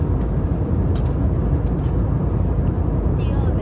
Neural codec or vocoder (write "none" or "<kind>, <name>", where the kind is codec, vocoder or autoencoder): none